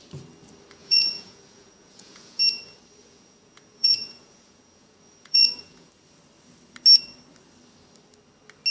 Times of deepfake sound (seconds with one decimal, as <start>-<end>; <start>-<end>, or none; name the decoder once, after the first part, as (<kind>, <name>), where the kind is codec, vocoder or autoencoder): 0.8-2.4 (vocoder, Vocos); 3.0-5.9

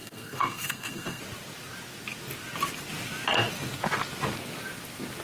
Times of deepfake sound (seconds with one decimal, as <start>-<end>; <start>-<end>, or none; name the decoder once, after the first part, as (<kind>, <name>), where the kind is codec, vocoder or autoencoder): 0.0-1.2 (codec, SNAC)

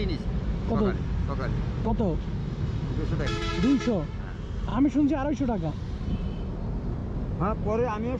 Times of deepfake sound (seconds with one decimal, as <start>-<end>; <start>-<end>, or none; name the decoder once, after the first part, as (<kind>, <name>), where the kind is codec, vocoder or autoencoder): 2.4-3.5 (autoencoder, DAC-VAE)

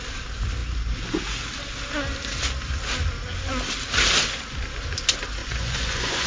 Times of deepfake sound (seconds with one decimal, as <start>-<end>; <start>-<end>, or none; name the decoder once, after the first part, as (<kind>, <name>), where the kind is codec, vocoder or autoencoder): 5.4-6.3 (vocoder, Vocos)

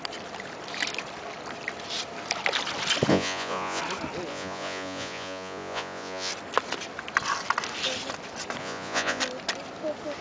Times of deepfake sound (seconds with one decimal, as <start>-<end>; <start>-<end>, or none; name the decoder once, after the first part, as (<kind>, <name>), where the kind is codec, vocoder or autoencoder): 3.1-3.8 (vocoder, Vocos); 4.3-6.3; 8.6-9.2

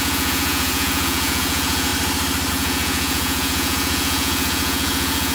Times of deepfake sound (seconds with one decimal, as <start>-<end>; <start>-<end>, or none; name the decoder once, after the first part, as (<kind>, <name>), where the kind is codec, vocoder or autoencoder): 0.0-1.9 (vocoder, Vocos); 2.5-5.3

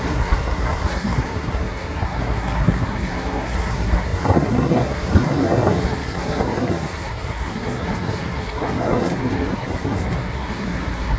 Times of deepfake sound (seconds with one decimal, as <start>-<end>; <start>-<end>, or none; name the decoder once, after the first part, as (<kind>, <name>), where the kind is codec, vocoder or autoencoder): 0.0-11.2 (codec, SNAC)